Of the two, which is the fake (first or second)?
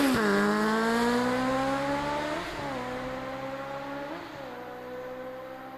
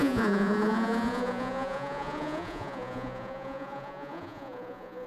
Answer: second